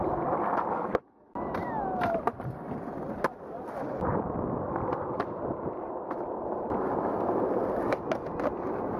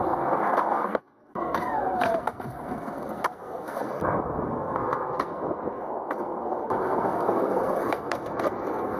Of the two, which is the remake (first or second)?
second